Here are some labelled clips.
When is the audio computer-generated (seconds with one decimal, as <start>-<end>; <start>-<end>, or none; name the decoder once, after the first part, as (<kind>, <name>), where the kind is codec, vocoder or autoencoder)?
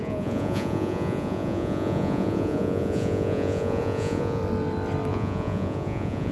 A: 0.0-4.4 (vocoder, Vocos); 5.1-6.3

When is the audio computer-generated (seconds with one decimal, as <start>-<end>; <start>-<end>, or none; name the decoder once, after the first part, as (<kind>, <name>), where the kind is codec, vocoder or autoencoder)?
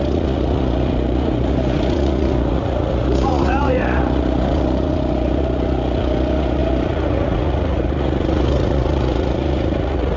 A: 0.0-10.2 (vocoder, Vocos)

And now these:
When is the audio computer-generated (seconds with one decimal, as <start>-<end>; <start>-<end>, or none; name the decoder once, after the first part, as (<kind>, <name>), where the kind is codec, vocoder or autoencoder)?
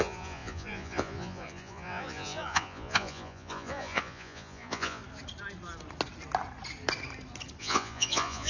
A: 0.0-5.0 (vocoder, Vocos); 7.6-8.5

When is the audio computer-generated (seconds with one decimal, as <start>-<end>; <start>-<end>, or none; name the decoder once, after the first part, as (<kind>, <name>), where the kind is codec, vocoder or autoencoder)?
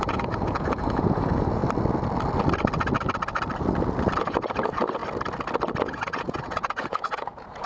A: 0.0-1.6 (vocoder, Vocos); 4.2-5.0; 5.8-7.7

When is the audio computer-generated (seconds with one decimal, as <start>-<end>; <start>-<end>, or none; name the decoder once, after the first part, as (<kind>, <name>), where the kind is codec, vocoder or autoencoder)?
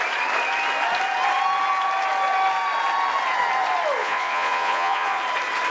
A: 4.0-5.2 (vocoder, Vocos)